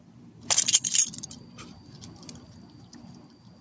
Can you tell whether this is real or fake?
real